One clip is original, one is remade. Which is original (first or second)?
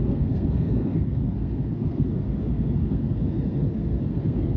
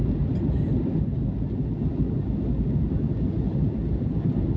second